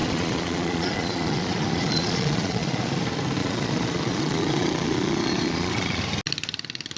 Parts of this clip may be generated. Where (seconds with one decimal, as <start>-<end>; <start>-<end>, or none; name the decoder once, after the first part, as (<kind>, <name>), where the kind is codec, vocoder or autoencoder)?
0.0-3.0 (vocoder, Vocos); 3.4-6.0